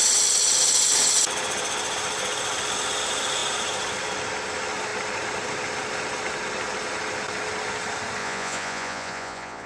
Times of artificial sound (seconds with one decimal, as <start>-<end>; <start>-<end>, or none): 8.2-9.7